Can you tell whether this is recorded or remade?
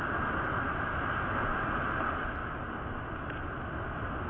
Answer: recorded